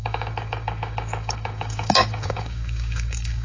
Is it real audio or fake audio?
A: fake